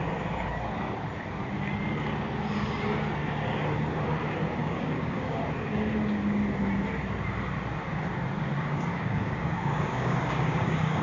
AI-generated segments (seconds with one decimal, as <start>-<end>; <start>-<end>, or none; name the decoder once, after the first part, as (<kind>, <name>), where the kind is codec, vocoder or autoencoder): 4.6-5.4 (codec, DAC); 8.9-11.0